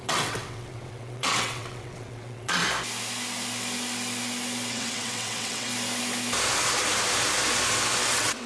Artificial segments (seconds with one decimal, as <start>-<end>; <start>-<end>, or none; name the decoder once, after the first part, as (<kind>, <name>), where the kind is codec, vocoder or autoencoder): 0.0-2.6 (vocoder, WaveNeXt); 4.7-5.7; 8.1-8.5